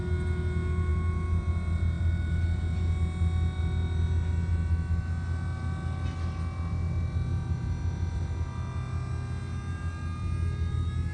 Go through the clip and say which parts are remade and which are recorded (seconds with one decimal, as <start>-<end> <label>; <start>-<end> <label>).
0.0-11.1 recorded